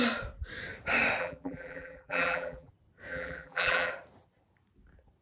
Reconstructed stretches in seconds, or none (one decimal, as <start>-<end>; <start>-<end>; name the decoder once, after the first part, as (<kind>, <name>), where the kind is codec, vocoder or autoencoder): 1.2-2.7 (vocoder, BigVGAN v2); 3.1-3.9